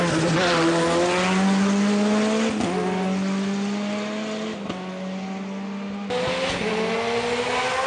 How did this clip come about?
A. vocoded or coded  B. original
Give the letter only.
B